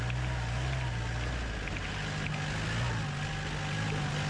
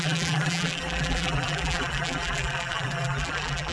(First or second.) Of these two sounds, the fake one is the second